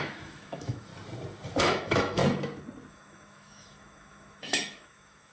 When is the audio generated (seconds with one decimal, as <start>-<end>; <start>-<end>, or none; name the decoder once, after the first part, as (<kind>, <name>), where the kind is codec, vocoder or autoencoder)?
0.0-0.9 (autoencoder, DAC-VAE); 1.6-2.2; 2.9-5.3